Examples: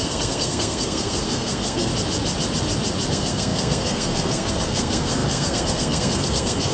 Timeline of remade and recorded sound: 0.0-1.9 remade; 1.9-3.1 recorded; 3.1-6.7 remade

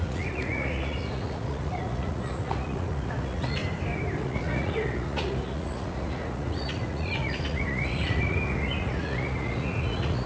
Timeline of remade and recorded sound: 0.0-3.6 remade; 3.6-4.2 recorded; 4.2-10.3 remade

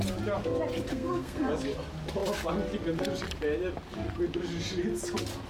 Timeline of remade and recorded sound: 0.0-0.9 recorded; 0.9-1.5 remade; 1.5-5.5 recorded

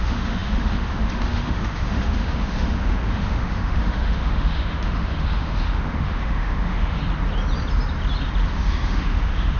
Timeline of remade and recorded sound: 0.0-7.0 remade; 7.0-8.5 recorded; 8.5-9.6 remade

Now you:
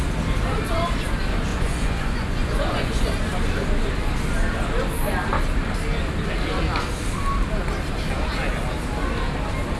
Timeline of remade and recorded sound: 0.0-1.5 recorded; 1.5-3.1 remade; 3.1-9.8 recorded

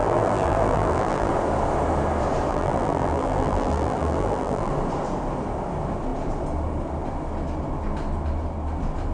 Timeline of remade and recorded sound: 0.0-1.3 remade; 1.3-2.5 recorded; 2.5-4.7 remade; 4.7-9.1 recorded

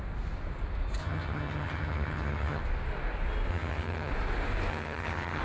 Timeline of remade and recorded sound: 0.0-1.0 recorded; 1.0-2.6 remade; 2.6-3.5 recorded; 3.5-4.1 remade; 4.1-4.7 recorded; 4.7-5.4 remade